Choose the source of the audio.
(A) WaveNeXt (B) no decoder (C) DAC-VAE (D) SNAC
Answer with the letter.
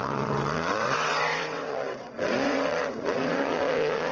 A